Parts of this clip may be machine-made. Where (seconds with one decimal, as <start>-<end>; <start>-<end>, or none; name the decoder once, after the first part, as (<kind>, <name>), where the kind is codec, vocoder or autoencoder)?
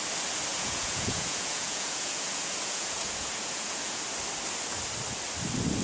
0.5-4.0 (vocoder, Vocos)